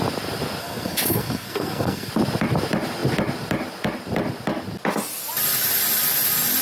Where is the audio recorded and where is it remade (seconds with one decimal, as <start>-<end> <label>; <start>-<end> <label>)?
0.0-0.6 recorded; 0.6-2.1 remade; 2.1-6.6 recorded